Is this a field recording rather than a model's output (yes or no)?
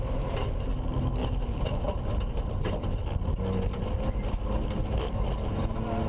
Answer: yes